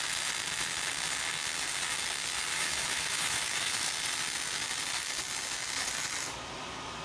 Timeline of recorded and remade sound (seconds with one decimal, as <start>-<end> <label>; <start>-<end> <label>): 0.0-2.5 recorded; 2.5-3.9 remade; 3.9-7.0 recorded